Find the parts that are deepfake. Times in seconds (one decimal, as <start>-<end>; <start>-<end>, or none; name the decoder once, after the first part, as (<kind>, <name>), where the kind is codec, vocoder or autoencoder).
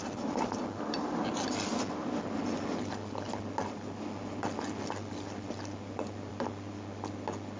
none